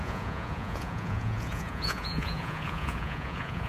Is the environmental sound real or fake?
fake